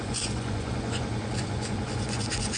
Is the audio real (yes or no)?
no